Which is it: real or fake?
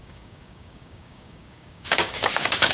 fake